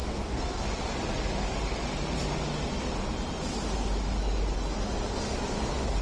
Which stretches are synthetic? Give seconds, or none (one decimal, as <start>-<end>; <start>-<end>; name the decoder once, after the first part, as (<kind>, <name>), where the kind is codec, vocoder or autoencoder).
0.0-0.6 (codec, SNAC)